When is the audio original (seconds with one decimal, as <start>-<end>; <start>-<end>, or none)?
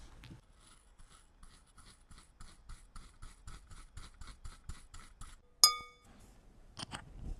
0.0-7.4